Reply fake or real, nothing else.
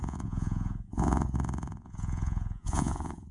fake